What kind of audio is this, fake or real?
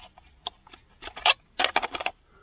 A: real